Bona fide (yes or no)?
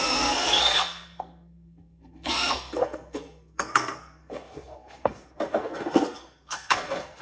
no